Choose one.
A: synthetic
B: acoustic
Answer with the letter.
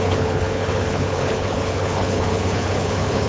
A